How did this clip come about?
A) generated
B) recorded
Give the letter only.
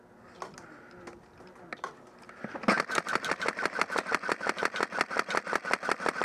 B